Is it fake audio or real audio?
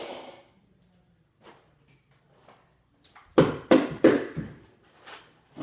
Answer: real